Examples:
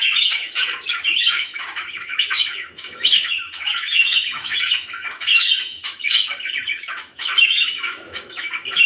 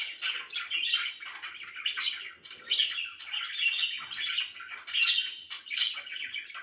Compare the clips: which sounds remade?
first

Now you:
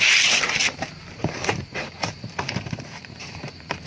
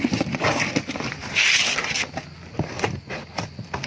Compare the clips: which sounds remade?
first